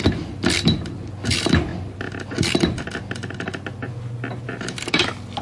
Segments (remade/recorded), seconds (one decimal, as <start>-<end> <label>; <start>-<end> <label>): 0.0-5.4 recorded